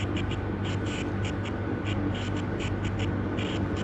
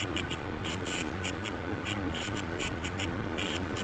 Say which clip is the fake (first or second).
second